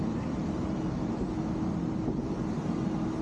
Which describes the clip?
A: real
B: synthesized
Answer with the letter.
A